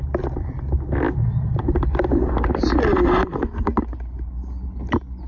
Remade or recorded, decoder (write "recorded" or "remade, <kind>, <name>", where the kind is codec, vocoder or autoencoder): recorded